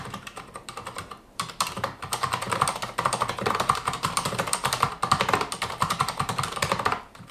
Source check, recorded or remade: remade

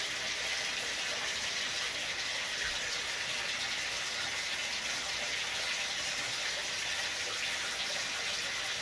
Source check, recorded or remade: recorded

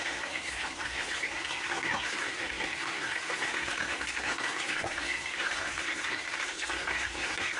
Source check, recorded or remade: remade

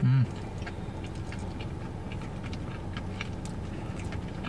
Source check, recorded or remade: recorded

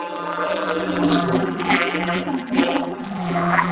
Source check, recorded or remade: remade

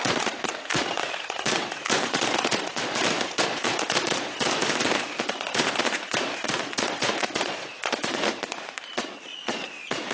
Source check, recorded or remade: remade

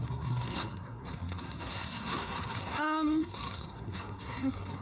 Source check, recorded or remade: remade